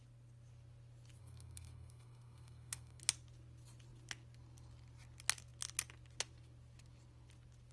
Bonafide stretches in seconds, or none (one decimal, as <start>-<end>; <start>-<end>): 0.0-1.2; 3.0-7.7